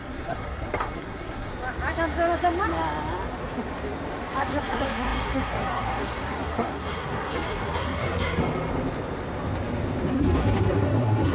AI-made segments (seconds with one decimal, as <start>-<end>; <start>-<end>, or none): 0.0-1.5; 4.4-8.4; 10.1-11.3